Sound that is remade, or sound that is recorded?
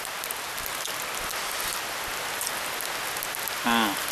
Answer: recorded